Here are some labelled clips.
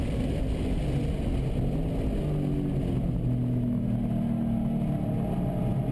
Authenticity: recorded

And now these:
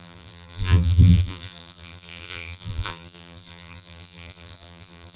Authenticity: remade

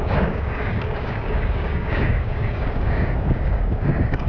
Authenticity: remade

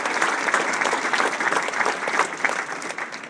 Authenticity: recorded